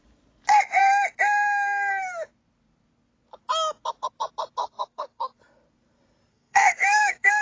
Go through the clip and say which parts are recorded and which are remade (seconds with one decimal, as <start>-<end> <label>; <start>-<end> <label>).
0.0-4.6 recorded; 4.6-5.4 remade; 5.4-6.3 recorded; 6.3-7.4 remade